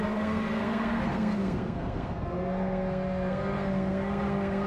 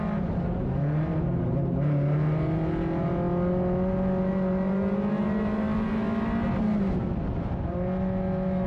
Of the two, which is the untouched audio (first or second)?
second